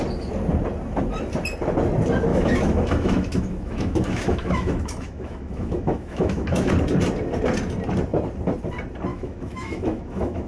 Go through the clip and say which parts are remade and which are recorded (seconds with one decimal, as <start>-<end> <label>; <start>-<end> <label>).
0.0-2.3 recorded; 2.3-6.7 remade; 6.7-9.1 recorded; 9.1-10.5 remade